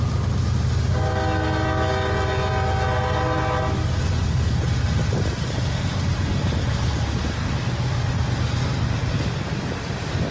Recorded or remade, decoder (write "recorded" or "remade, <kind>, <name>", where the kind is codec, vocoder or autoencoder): recorded